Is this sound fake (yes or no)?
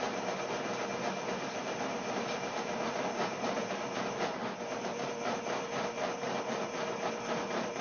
no